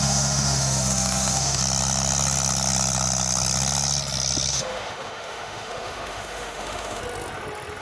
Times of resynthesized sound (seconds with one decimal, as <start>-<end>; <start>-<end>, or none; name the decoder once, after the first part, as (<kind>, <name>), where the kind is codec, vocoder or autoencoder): 0.0-1.6 (autoencoder, DAC-VAE); 4.5-7.0